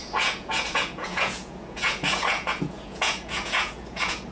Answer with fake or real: fake